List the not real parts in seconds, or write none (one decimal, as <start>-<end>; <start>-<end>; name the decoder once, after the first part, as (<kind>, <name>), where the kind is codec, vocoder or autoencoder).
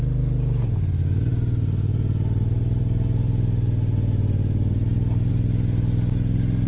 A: none